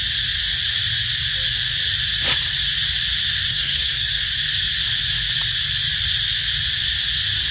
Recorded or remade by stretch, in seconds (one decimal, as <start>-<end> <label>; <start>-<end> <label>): 0.0-3.5 recorded; 3.5-4.2 remade; 4.2-7.5 recorded